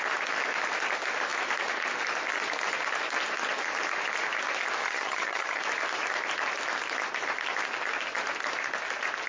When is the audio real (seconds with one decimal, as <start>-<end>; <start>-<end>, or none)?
0.0-4.8; 5.6-9.3